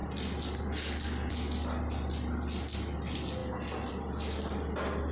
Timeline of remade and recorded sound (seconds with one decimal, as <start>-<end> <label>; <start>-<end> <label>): 0.0-5.1 recorded